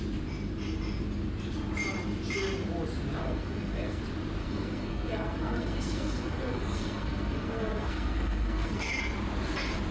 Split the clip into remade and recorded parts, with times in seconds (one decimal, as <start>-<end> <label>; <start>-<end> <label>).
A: 0.0-3.2 recorded; 3.2-4.0 remade; 4.0-4.4 recorded; 4.4-9.0 remade; 9.0-9.9 recorded